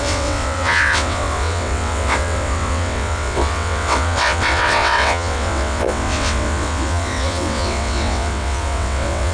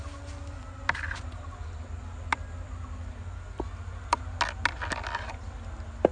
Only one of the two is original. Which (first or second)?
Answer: second